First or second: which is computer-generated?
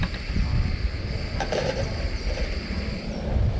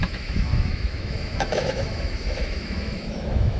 second